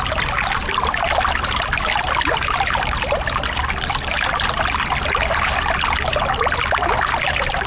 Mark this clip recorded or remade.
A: recorded